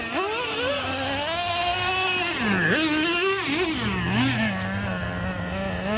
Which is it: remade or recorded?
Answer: recorded